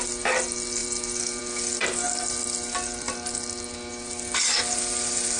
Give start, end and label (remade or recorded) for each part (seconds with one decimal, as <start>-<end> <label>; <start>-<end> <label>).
0.0-5.4 recorded

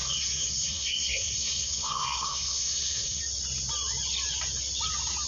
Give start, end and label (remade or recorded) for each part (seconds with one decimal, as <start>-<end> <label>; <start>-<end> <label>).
0.0-3.2 remade; 3.2-5.3 recorded

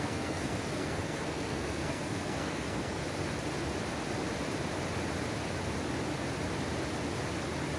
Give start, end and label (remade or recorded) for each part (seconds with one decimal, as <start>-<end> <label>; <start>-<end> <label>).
0.0-3.0 remade; 3.0-7.8 recorded